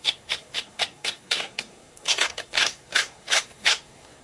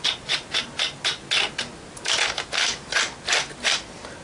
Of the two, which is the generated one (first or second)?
first